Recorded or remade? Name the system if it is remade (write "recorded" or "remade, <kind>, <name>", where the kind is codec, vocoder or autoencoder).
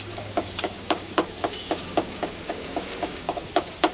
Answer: remade, codec, DAC